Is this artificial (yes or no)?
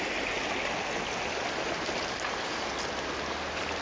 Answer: no